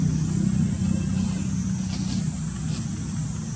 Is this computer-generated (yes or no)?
no